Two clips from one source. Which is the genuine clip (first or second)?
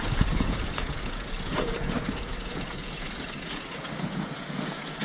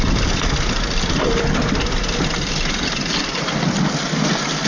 second